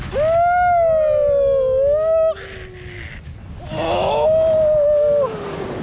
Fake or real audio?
real